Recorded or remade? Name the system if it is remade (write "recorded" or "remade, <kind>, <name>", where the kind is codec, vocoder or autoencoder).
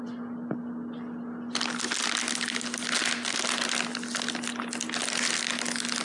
recorded